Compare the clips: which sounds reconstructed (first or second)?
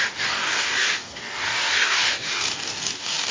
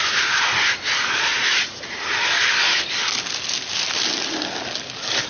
first